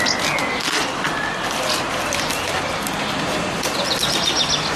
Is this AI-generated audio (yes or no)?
no